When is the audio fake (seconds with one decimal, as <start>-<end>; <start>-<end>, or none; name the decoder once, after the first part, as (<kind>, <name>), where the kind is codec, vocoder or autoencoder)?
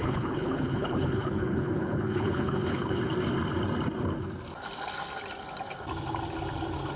0.0-3.0 (codec, HILCodec)